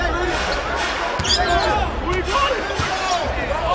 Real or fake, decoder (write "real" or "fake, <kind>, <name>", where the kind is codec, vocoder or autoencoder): real